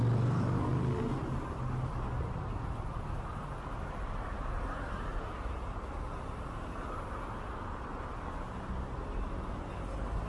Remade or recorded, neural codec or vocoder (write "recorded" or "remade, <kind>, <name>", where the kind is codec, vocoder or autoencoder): recorded